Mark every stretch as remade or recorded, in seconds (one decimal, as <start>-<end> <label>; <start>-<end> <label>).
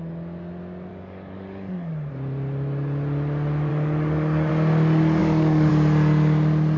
0.0-0.9 recorded; 0.9-2.1 remade; 2.1-3.7 recorded; 3.7-4.5 remade; 4.5-5.2 recorded; 5.2-5.7 remade; 5.7-6.8 recorded